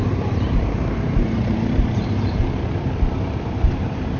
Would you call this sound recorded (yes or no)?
no